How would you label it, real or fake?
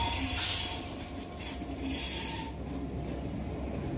real